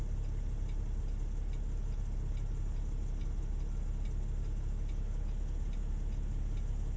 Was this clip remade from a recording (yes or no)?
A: no